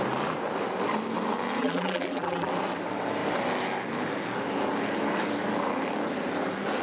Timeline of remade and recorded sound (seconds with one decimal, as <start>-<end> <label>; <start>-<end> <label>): 0.0-1.6 recorded; 1.6-2.5 remade; 2.5-6.8 recorded